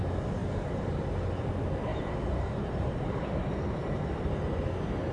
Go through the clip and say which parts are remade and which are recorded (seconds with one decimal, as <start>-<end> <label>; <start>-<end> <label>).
0.0-0.4 recorded; 0.4-1.0 remade; 1.0-1.9 recorded; 1.9-4.2 remade; 4.2-5.1 recorded